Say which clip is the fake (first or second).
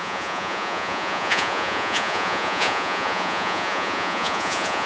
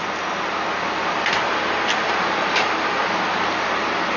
first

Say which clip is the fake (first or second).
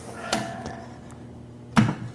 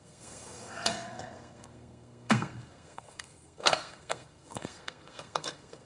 second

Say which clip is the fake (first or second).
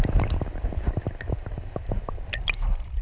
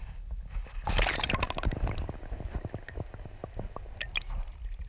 first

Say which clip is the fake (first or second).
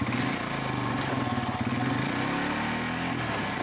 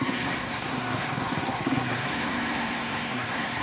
second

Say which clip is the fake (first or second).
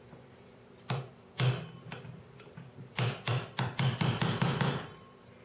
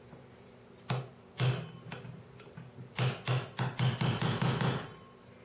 first